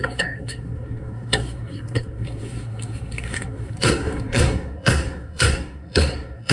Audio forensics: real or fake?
fake